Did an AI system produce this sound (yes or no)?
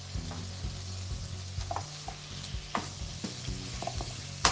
no